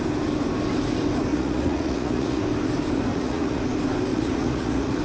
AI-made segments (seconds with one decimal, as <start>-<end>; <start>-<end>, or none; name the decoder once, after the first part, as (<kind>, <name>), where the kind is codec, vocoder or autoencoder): 1.3-2.4 (vocoder, Vocos); 3.1-3.6; 4.1-5.0